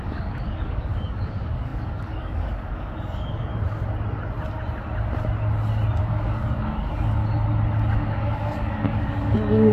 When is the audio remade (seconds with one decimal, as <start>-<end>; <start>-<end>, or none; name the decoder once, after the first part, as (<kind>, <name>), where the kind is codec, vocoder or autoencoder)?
0.0-3.5 (codec, DAC); 6.0-7.2; 7.8-9.7